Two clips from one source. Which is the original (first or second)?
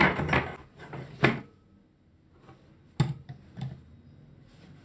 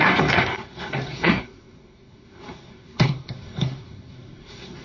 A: first